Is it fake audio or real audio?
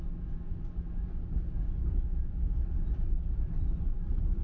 real